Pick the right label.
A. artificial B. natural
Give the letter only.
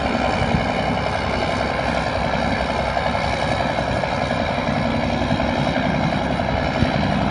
B